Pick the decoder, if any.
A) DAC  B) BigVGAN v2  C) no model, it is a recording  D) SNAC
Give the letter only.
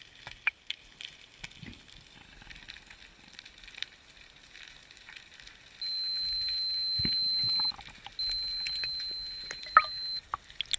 C